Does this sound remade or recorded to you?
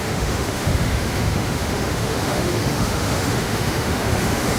remade